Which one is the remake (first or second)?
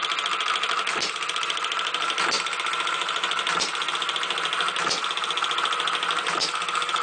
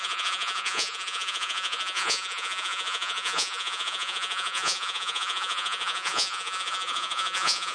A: second